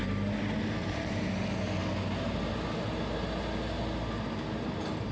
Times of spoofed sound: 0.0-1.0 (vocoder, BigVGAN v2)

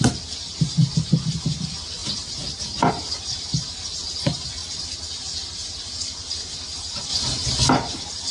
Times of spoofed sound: none

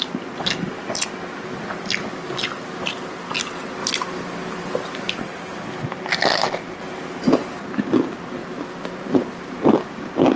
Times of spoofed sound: 8.4-9.6 (vocoder, BigVGAN v2)